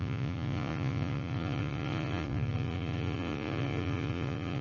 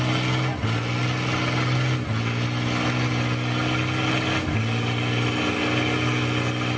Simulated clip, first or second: first